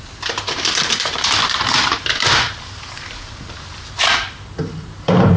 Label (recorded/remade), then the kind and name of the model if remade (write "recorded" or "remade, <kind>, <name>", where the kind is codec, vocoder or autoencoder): remade, vocoder, BigVGAN v2